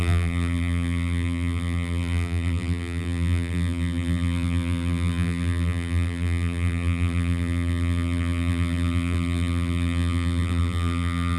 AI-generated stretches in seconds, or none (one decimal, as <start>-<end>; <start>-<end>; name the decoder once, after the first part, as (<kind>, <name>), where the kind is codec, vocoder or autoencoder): 0.0-11.4 (vocoder, BigVGAN v2)

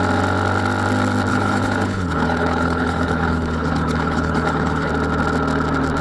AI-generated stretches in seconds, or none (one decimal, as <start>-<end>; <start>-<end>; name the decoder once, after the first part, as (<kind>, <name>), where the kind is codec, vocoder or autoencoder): 1.3-4.9 (codec, HILCodec)

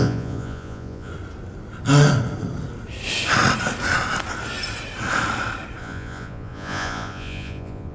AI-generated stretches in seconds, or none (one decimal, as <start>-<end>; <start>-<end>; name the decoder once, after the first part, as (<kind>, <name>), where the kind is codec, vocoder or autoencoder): 0.0-1.1 (vocoder, Vocos); 5.8-7.9

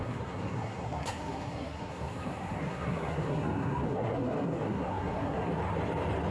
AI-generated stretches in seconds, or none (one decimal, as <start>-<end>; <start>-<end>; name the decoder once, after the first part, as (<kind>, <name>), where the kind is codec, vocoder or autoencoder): 0.0-5.5 (codec, SNAC)

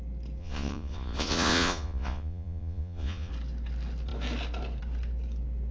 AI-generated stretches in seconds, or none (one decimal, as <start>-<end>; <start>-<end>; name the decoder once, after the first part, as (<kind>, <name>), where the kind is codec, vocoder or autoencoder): 0.4-3.3 (vocoder, Vocos)

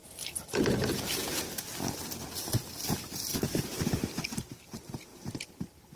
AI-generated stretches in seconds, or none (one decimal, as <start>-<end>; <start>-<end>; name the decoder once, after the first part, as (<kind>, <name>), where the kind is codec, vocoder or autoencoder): 0.0-1.2 (vocoder, BigVGAN v2); 3.3-4.1; 5.1-6.0